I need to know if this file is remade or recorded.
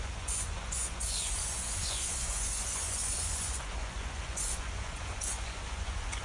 remade